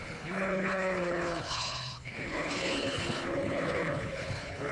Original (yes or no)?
no